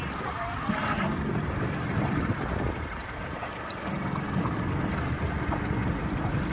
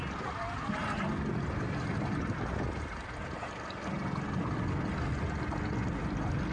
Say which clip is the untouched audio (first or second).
second